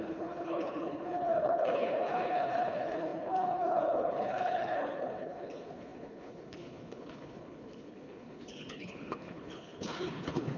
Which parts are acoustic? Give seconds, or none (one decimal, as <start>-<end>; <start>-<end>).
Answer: none